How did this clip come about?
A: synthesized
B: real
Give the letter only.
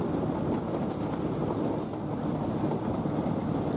B